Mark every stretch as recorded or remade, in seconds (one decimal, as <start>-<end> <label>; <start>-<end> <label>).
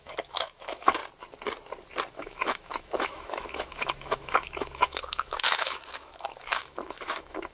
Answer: 0.0-1.0 remade; 1.0-2.1 recorded; 2.1-7.5 remade